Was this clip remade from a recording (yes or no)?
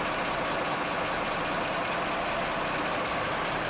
no